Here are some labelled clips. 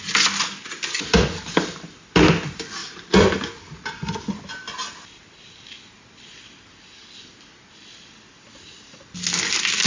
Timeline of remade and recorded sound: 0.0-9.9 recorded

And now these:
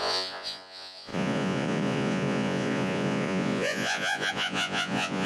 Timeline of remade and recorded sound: 0.0-5.3 remade

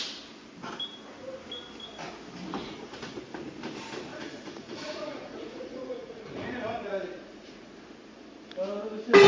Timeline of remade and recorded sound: 0.0-2.6 recorded; 2.6-3.2 remade; 3.2-4.1 recorded; 4.1-7.8 remade; 7.8-9.3 recorded

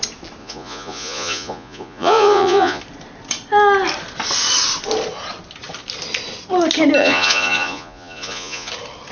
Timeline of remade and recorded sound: 0.0-0.4 recorded; 0.4-2.8 remade; 2.8-7.0 recorded; 7.0-8.7 remade; 8.7-9.1 recorded

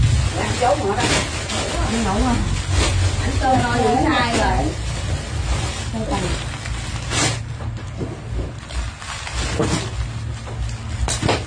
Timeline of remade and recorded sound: 0.0-11.5 recorded

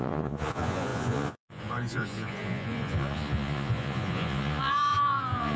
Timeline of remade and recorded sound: 0.0-5.6 remade

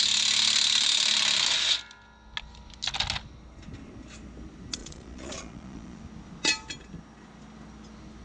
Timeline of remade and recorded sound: 0.0-4.8 recorded; 4.8-6.0 remade; 6.0-8.2 recorded